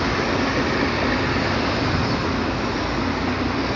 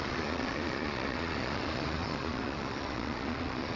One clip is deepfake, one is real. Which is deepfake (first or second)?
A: second